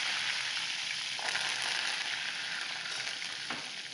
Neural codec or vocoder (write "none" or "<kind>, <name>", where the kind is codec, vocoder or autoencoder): none